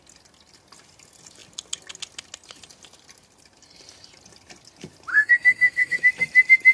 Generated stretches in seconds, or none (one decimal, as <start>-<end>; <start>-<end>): 5.1-6.0